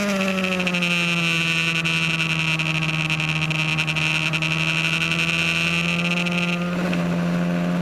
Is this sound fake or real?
real